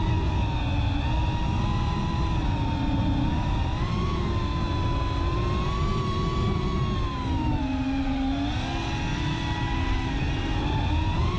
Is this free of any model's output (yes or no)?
yes